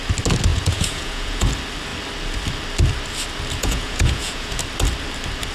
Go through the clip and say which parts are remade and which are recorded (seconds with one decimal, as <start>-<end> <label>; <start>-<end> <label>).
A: 0.0-0.5 recorded; 0.5-1.5 remade; 1.5-3.6 recorded; 3.6-4.6 remade; 4.6-5.5 recorded